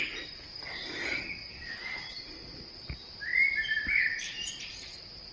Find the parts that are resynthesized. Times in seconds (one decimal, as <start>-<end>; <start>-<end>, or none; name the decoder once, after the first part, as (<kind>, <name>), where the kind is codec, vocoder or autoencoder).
none